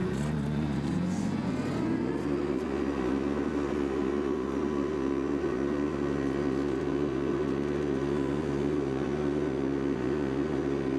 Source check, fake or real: fake